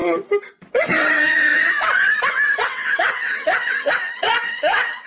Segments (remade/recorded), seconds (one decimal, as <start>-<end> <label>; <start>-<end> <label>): 0.0-0.7 recorded; 0.7-5.1 remade

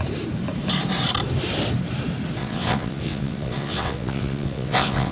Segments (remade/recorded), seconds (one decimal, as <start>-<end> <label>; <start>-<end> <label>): 0.0-2.4 recorded; 2.4-5.1 remade

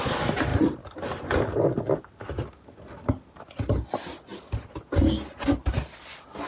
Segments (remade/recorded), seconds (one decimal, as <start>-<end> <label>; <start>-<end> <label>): 0.0-6.5 recorded

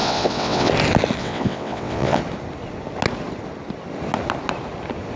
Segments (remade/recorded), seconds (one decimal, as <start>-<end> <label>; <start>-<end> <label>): 0.0-0.7 remade; 0.7-1.2 recorded; 1.2-2.2 remade; 2.2-5.2 recorded

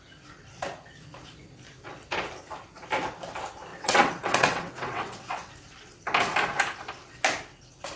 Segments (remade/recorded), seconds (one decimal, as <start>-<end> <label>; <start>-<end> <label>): 0.0-3.7 recorded; 3.7-5.5 remade; 5.5-8.0 recorded

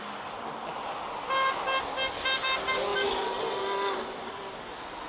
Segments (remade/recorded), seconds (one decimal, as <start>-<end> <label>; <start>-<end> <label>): 0.0-5.1 recorded